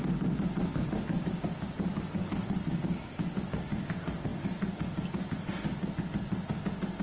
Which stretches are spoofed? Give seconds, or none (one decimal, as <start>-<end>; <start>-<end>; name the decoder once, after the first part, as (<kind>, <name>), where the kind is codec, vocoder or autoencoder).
1.9-3.1 (codec, DAC)